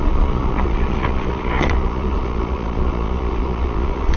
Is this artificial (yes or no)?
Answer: yes